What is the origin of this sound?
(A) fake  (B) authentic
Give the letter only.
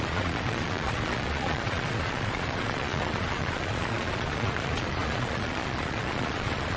A